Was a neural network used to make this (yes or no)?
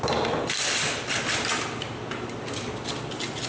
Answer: no